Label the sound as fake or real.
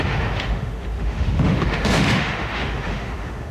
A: fake